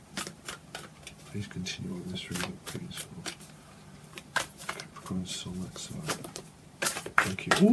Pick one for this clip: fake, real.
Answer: fake